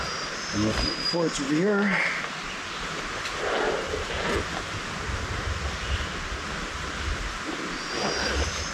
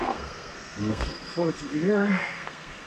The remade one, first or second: second